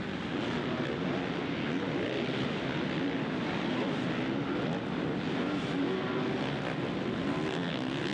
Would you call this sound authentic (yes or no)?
yes